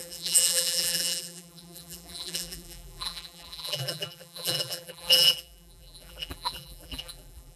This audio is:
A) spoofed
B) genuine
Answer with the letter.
A